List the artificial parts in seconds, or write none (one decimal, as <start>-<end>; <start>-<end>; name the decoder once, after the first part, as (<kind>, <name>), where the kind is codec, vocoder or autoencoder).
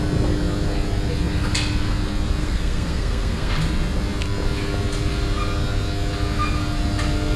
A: 2.4-3.5 (codec, SNAC)